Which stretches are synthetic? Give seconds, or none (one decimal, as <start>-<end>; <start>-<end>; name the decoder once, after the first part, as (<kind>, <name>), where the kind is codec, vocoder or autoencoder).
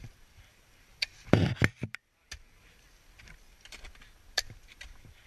none